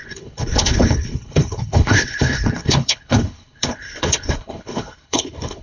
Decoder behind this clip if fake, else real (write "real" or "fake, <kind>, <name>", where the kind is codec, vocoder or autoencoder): fake, codec, HILCodec